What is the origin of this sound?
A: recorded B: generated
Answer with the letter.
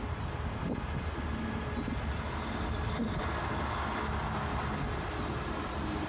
A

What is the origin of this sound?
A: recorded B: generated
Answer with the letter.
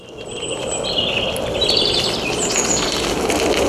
A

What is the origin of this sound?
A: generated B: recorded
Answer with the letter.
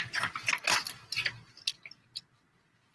B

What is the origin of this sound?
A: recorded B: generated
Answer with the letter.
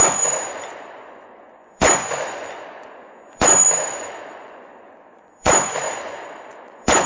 B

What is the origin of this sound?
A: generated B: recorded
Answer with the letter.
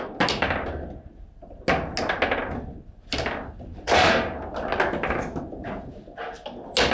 B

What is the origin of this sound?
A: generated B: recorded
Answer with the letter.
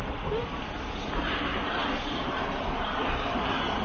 B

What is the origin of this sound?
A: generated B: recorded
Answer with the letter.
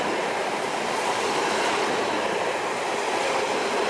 B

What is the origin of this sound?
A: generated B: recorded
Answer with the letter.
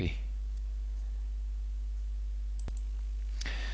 B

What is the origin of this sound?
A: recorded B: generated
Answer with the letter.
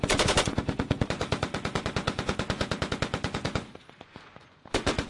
B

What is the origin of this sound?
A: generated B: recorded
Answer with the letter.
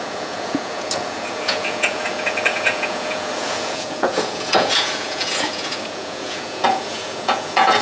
A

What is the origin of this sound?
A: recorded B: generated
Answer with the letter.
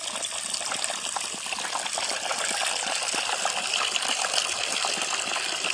A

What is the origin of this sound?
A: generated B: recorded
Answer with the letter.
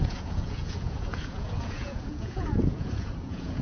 A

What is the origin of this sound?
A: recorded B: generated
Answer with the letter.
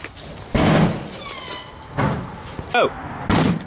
A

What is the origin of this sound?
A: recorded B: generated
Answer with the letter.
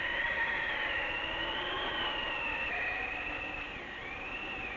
A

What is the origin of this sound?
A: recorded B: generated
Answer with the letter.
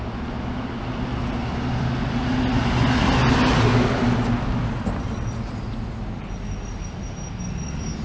A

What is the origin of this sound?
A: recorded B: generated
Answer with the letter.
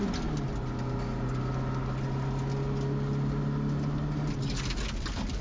A